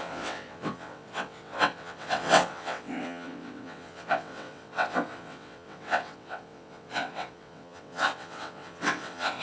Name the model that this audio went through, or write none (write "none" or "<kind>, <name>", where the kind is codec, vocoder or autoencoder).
vocoder, WaveNeXt